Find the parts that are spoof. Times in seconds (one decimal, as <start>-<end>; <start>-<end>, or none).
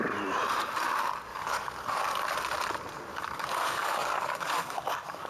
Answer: 1.3-2.0; 3.1-5.3